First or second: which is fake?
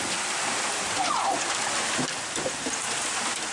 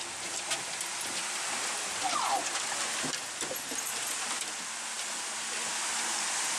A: first